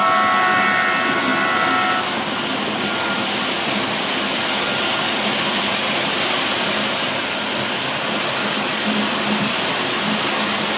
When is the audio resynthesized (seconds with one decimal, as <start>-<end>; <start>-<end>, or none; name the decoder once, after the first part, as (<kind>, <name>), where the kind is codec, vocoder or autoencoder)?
none